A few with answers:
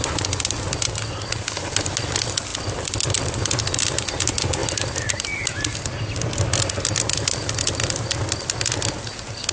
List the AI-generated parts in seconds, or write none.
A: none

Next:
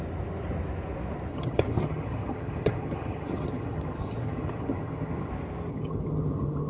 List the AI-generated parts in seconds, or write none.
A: 1.3-5.3 (vocoder, HiFi-GAN); 5.7-6.7

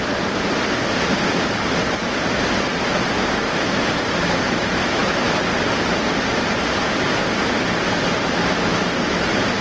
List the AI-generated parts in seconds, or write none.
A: none

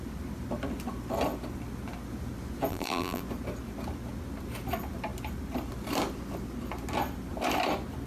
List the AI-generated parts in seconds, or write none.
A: 2.7-3.2 (vocoder, BigVGAN v2)

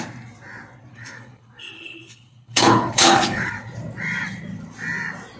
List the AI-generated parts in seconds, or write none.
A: 0.9-3.5 (codec, HILCodec)

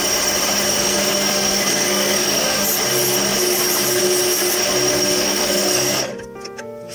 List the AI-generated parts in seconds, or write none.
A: 0.8-2.6 (codec, SNAC); 4.9-6.1

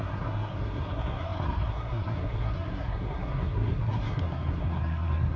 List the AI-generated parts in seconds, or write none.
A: 0.0-5.4 (codec, SNAC)

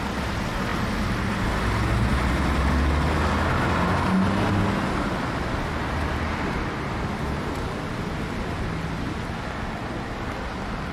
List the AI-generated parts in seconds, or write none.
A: none